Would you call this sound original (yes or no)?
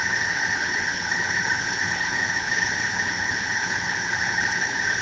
no